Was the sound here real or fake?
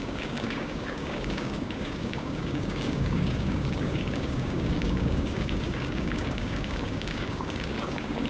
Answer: fake